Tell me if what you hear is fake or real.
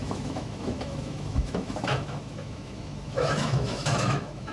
fake